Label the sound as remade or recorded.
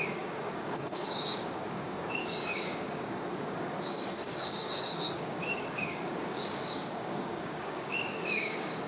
remade